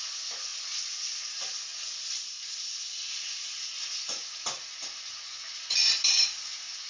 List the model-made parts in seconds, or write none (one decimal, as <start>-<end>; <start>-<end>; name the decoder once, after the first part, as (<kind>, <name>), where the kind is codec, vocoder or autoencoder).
none